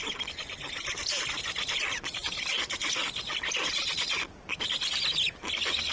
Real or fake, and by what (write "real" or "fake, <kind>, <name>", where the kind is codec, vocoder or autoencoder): real